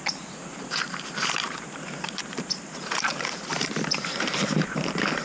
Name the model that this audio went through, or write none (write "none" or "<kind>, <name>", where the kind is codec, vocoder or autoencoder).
vocoder, BigVGAN v2